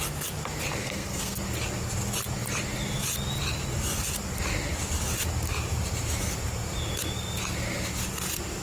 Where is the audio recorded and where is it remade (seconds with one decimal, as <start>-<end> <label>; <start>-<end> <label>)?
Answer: 0.0-0.8 recorded; 0.8-1.4 remade; 1.4-8.6 recorded